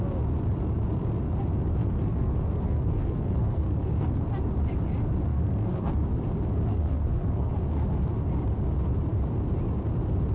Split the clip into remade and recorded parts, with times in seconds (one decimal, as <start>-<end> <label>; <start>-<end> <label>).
0.0-1.8 recorded; 1.8-4.2 remade; 4.2-5.3 recorded; 5.3-5.9 remade; 5.9-6.7 recorded; 6.7-7.5 remade; 7.5-10.3 recorded